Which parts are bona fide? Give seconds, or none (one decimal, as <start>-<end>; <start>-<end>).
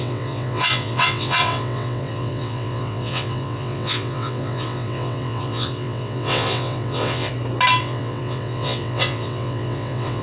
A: 7.3-7.8